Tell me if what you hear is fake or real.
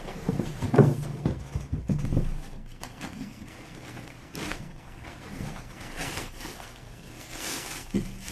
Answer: fake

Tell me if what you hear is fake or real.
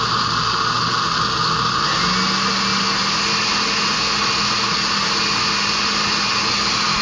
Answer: real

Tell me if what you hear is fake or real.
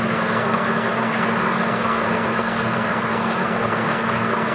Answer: fake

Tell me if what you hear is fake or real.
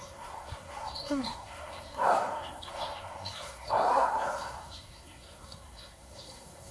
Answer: fake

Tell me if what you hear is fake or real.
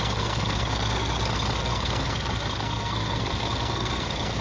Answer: fake